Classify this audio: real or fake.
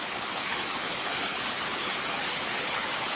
fake